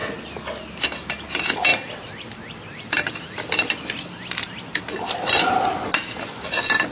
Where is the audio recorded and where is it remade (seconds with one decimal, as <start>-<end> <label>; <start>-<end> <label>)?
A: 0.0-6.9 recorded